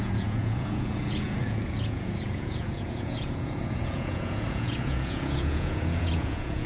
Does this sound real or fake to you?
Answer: fake